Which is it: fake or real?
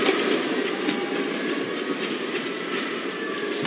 real